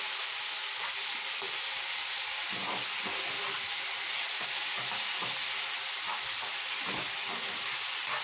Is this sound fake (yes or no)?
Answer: no